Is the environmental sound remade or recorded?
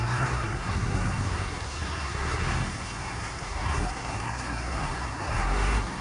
remade